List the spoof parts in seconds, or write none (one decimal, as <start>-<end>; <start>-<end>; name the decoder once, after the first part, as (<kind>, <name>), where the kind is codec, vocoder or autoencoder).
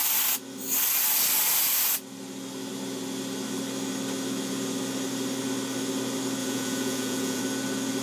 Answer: 6.4-7.4 (vocoder, Vocos)